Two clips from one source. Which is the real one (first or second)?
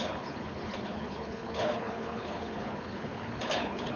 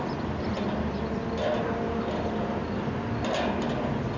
second